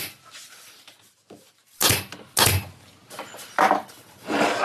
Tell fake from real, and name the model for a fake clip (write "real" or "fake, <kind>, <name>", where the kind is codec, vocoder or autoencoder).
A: real